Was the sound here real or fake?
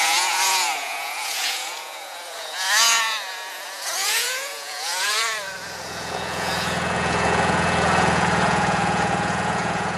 fake